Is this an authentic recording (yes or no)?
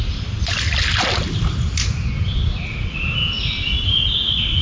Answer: yes